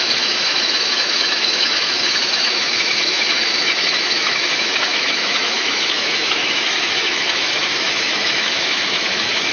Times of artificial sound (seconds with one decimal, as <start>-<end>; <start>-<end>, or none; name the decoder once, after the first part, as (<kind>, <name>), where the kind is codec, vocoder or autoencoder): 0.0-9.5 (autoencoder, DAC-VAE)